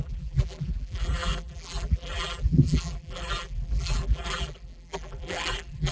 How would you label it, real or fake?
fake